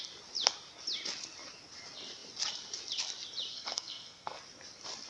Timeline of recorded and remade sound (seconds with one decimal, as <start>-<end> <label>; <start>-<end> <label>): 0.0-3.5 recorded; 3.5-4.4 remade; 4.4-5.1 recorded